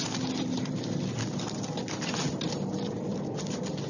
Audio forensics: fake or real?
real